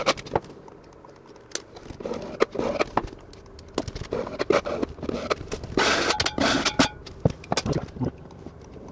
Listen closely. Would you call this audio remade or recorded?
recorded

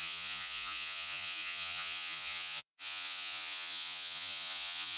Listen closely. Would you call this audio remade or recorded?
remade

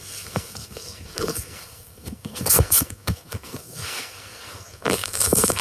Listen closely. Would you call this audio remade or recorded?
remade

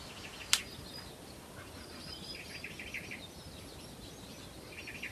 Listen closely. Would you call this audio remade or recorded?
recorded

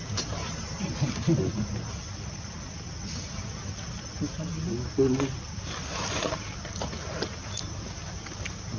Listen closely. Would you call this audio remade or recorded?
recorded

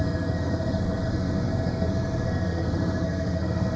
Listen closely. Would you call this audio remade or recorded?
remade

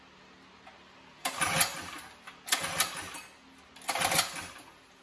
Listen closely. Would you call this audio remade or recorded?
recorded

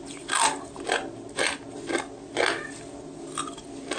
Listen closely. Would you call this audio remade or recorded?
recorded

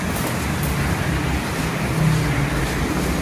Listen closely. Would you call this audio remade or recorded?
recorded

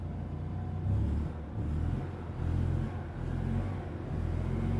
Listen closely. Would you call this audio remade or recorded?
recorded